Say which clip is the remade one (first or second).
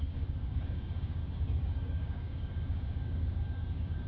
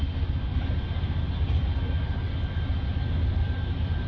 first